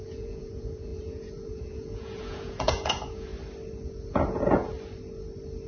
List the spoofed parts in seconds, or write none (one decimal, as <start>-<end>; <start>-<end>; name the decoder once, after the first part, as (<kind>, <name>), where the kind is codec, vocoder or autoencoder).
0.0-3.3 (vocoder, Vocos); 4.1-4.7